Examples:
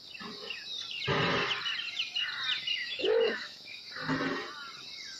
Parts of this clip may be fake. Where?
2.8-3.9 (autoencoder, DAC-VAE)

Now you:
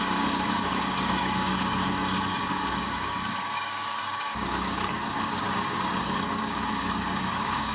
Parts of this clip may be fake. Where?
0.0-7.7 (codec, DAC)

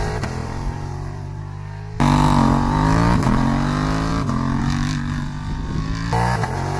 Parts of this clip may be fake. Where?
0.4-1.4 (vocoder, BigVGAN v2)

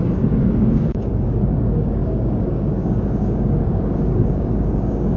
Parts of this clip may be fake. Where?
0.0-5.2 (codec, DAC)

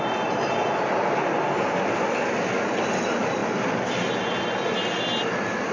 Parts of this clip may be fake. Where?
none

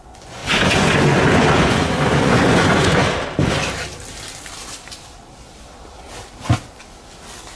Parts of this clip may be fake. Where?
0.0-3.0 (vocoder, Vocos)

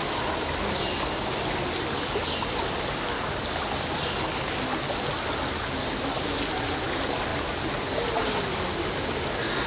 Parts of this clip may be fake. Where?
none